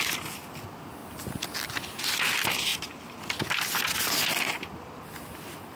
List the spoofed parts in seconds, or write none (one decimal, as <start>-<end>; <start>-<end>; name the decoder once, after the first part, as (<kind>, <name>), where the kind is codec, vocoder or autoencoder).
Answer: 2.7-3.2 (vocoder, BigVGAN v2)